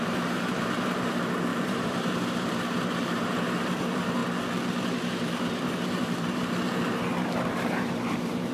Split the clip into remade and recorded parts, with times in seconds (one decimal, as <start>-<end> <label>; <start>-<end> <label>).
0.0-4.2 remade; 4.2-4.7 recorded; 4.7-8.5 remade